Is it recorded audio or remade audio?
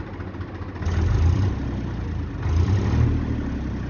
recorded